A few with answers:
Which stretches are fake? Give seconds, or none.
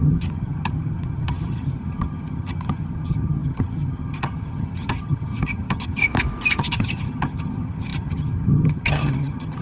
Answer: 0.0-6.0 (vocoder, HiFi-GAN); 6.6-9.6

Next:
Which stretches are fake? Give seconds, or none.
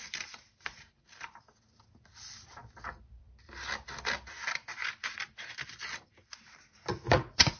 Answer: 6.9-7.6 (vocoder, Vocos)